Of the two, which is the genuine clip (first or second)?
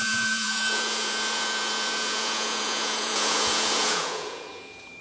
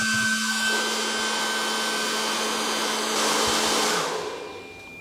second